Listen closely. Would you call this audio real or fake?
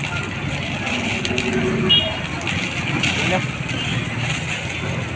real